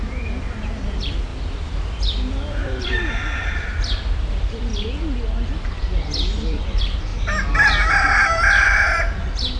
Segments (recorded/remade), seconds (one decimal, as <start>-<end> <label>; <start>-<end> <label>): 0.0-4.7 remade; 4.7-5.5 recorded; 5.5-7.1 remade; 7.1-8.0 recorded; 8.0-9.6 remade